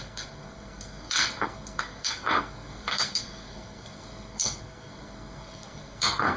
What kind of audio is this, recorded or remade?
remade